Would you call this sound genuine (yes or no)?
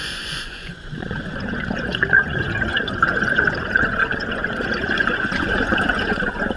no